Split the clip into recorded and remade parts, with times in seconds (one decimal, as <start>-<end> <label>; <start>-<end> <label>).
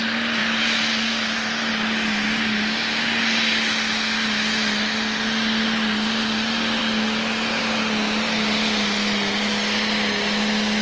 0.0-0.4 recorded; 0.4-1.7 remade; 1.7-10.8 recorded